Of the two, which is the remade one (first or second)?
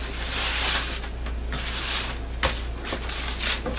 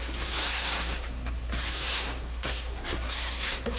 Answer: second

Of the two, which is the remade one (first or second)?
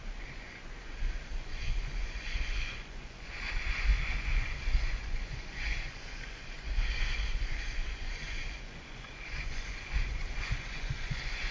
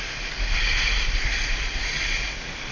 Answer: first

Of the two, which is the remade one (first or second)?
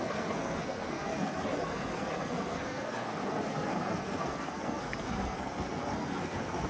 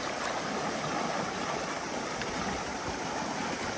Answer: first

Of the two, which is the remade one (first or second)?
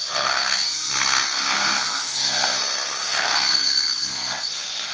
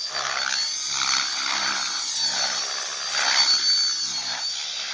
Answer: first